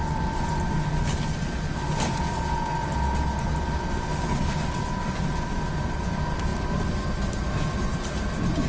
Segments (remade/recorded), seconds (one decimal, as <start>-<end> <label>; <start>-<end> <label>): 0.0-8.7 recorded